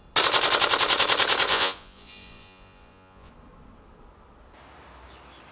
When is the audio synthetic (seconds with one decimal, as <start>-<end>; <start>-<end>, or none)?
1.5-3.3